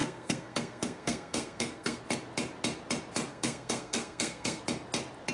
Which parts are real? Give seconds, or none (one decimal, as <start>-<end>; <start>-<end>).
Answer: 2.0-3.3; 4.6-5.3